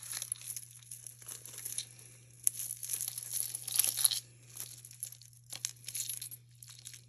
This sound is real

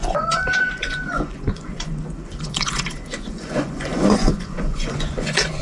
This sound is fake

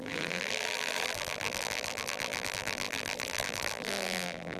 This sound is fake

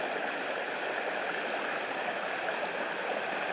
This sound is real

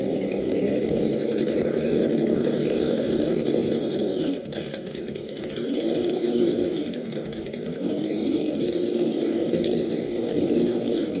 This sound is fake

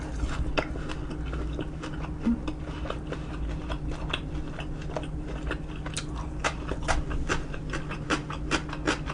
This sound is real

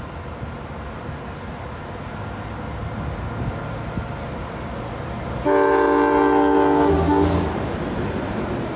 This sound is real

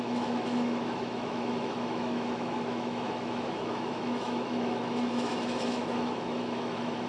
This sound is fake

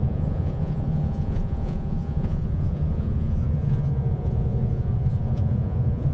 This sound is fake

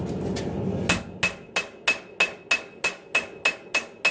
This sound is real